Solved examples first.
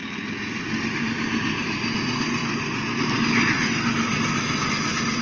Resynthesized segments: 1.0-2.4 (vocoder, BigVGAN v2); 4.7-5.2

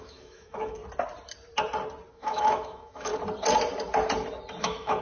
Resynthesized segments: 0.0-0.8 (autoencoder, DAC-VAE); 2.1-3.1; 4.6-5.0

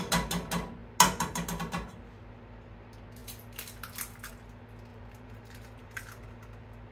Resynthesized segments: 4.9-6.0 (vocoder, BigVGAN v2)

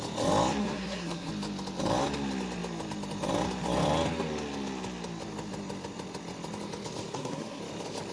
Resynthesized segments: 0.6-1.3 (codec, SNAC); 7.1-7.6

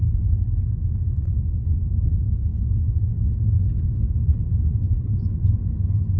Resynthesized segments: none

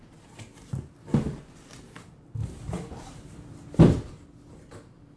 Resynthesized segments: 2.4-3.8 (vocoder, BigVGAN v2)

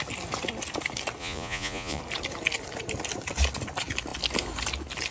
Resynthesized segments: 1.2-2.0 (vocoder, Vocos)